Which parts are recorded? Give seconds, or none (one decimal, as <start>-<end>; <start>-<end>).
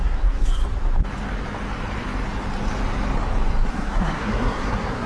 0.6-3.7